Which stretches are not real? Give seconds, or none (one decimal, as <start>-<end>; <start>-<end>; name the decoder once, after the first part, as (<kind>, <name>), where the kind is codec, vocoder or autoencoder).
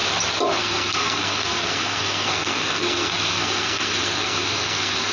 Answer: 0.6-5.1 (codec, SNAC)